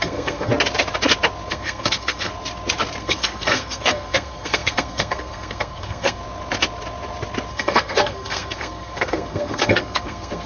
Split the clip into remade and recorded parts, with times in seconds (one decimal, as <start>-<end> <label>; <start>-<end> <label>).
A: 0.0-0.5 remade; 0.5-1.5 recorded; 1.5-2.3 remade; 2.3-3.0 recorded; 3.0-6.2 remade; 6.2-7.5 recorded; 7.5-10.5 remade